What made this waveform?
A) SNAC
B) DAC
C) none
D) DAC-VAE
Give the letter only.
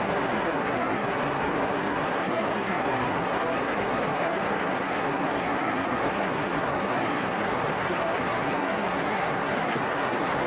A